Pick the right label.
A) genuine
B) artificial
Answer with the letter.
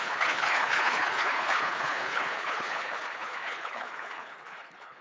B